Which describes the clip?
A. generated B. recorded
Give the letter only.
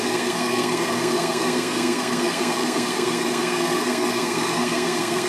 A